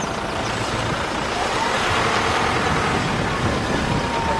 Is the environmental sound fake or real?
real